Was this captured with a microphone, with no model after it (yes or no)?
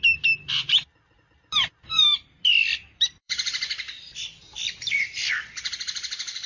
no